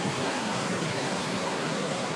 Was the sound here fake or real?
fake